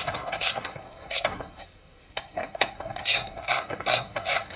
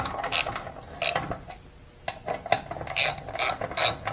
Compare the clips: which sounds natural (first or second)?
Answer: second